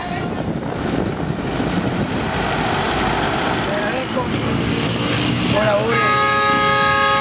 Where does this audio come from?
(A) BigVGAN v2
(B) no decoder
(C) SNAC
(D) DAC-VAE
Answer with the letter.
B